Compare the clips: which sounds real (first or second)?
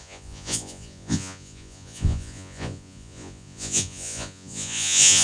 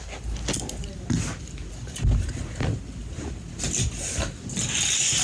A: second